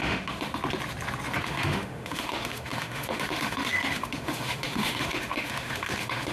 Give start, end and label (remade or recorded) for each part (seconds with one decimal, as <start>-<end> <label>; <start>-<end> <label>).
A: 0.0-0.5 remade; 0.5-1.4 recorded; 1.4-6.3 remade